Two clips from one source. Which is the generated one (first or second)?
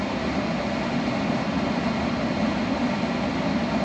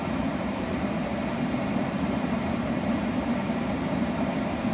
second